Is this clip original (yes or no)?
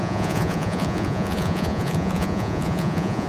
no